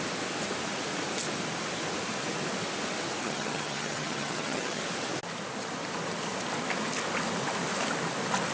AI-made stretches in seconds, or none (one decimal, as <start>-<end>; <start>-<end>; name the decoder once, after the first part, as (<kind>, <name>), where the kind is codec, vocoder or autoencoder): 3.2-4.8 (vocoder, HiFi-GAN)